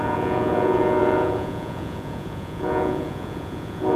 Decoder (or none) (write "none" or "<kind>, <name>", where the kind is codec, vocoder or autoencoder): vocoder, Vocos